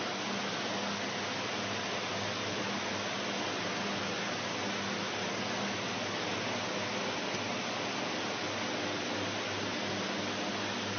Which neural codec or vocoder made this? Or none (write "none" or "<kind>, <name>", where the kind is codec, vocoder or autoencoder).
none